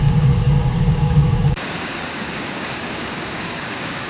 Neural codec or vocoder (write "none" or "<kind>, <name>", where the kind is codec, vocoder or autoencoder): codec, DAC